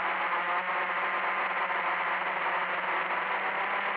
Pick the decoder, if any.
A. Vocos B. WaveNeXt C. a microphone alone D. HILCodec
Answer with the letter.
C